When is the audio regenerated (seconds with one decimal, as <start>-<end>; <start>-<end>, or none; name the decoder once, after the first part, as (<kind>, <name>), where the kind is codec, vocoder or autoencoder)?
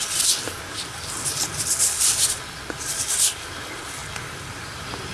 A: none